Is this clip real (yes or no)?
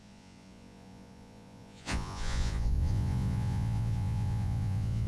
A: no